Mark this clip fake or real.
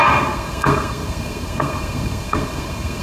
fake